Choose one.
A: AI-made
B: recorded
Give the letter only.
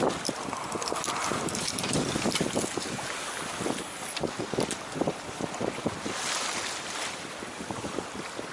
B